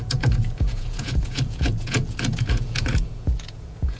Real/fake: fake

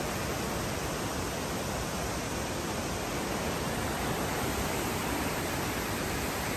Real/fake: real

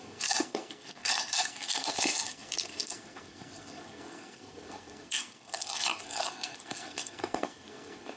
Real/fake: fake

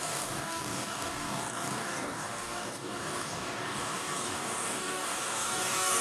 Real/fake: fake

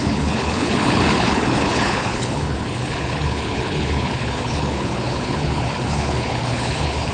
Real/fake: fake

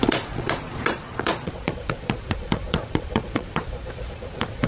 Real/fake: fake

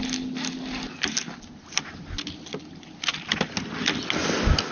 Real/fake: real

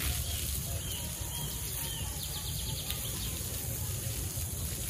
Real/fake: real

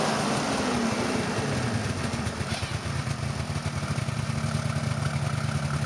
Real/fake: real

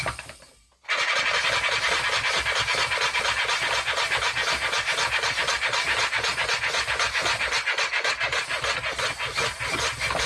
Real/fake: real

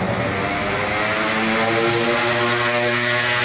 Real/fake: real